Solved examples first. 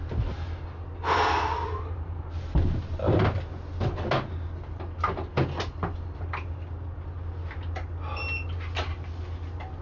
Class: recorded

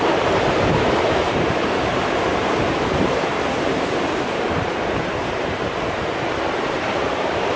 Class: remade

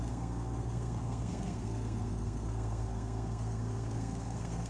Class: remade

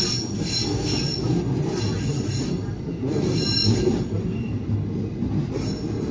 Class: recorded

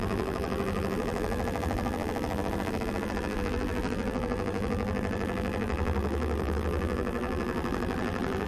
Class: remade